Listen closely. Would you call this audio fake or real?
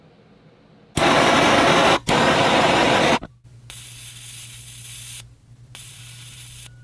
real